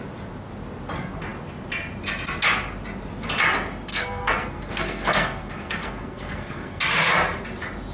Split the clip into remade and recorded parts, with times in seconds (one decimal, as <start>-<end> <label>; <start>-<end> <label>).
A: 0.0-3.9 recorded; 3.9-6.8 remade; 6.8-7.9 recorded